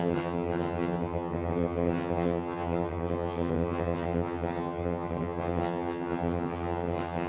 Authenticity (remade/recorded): remade